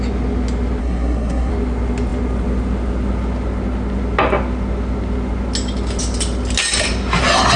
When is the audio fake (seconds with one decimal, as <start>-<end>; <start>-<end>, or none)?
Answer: 0.8-1.5